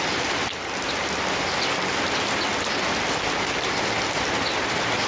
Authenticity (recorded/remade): recorded